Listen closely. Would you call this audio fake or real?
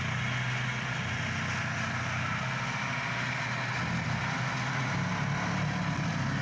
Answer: real